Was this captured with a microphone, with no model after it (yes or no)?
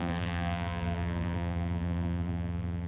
no